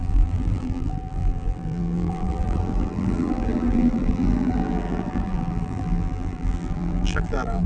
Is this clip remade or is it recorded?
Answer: remade